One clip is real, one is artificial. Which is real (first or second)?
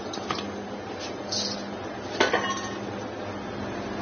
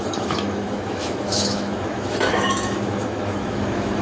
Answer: first